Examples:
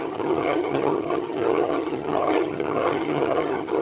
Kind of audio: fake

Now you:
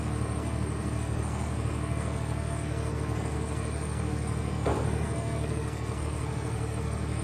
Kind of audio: fake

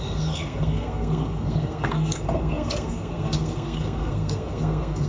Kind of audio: fake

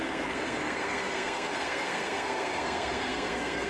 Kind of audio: fake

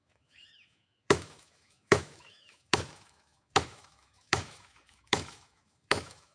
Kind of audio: fake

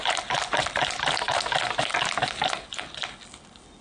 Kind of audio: real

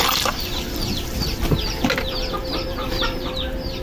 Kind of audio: fake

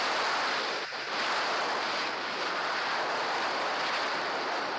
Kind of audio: real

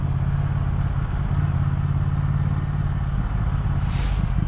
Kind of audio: real